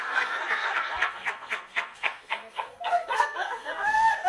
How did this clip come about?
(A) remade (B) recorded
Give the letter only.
A